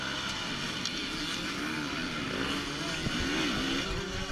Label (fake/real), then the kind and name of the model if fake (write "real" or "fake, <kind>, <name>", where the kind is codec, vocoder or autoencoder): real